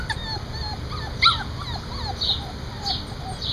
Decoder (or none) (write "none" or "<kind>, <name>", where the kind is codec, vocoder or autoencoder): none